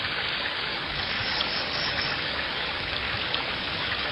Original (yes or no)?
no